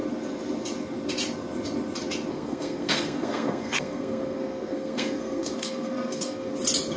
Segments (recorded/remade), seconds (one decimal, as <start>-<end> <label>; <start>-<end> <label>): 0.0-2.3 recorded; 2.3-6.5 remade; 6.5-7.0 recorded